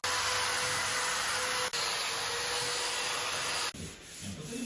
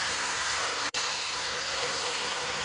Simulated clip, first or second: second